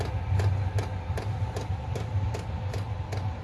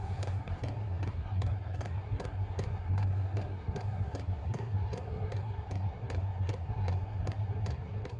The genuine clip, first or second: first